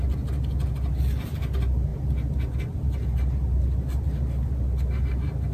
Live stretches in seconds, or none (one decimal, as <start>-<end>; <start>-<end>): 0.0-5.5